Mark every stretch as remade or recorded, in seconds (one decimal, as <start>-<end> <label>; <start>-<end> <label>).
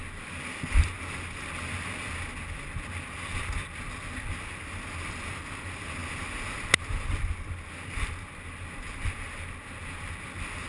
0.0-10.7 recorded